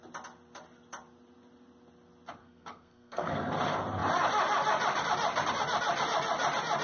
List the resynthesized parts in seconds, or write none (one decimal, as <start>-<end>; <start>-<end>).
2.4-3.5